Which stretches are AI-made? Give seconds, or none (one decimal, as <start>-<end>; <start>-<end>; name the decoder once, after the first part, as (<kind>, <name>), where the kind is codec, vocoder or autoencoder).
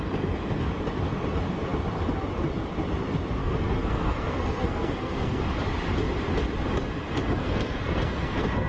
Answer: 3.4-5.4 (codec, SNAC); 7.4-8.7